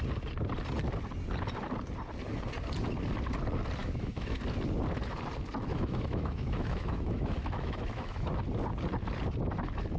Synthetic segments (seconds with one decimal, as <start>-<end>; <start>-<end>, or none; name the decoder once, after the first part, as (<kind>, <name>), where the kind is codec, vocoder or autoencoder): 3.8-4.4 (autoencoder, DAC-VAE); 5.7-8.3